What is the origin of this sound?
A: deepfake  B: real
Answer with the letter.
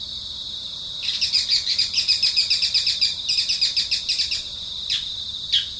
B